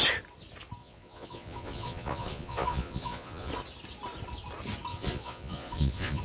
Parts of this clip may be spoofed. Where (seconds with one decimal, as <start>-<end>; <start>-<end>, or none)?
0.8-3.5; 4.9-6.2